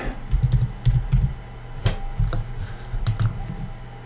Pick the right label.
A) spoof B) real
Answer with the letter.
B